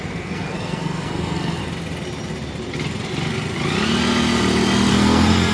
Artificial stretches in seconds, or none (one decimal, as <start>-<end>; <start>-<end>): 0.0-1.6; 4.9-5.5